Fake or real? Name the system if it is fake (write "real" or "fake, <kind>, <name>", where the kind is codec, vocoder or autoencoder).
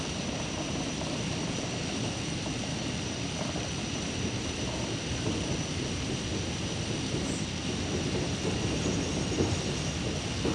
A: real